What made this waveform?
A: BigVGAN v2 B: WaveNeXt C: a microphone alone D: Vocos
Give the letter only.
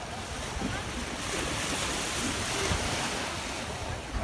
C